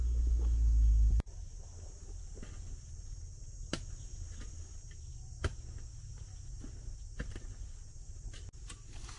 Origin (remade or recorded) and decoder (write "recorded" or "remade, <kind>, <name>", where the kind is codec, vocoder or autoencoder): recorded